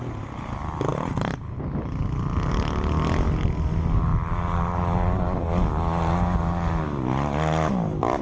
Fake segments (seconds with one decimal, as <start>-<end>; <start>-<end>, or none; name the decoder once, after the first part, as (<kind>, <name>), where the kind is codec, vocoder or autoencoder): none